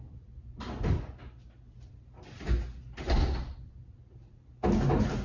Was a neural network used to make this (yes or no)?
no